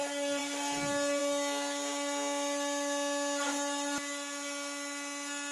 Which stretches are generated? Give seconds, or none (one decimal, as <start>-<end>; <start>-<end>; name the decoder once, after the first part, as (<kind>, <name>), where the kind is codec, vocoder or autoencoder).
none